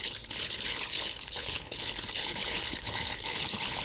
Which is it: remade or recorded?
remade